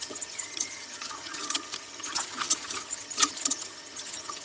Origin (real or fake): fake